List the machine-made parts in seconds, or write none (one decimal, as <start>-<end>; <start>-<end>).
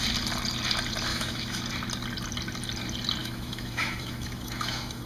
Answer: 1.1-1.6; 3.2-5.1